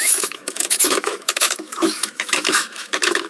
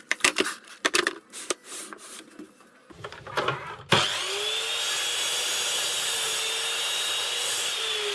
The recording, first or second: second